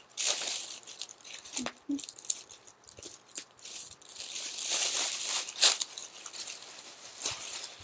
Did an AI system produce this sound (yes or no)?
no